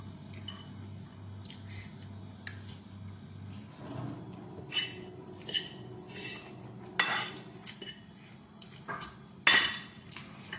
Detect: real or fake real